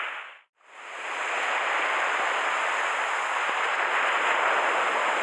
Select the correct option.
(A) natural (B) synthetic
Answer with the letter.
A